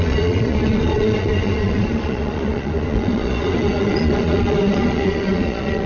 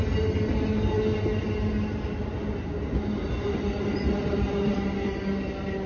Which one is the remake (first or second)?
first